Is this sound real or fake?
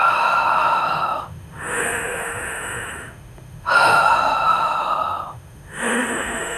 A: fake